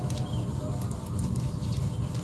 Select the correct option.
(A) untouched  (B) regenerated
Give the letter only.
A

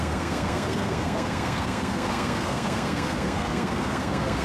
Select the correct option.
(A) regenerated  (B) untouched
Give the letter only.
A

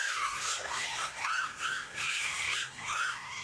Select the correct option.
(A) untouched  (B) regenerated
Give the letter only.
B